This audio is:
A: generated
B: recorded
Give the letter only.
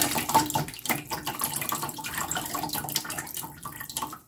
A